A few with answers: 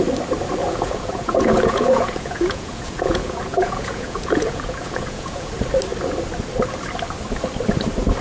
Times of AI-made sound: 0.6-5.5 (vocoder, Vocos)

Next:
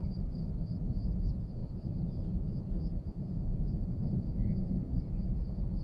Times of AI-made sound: 0.6-5.8 (vocoder, Vocos)